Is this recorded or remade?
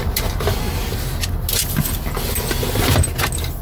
recorded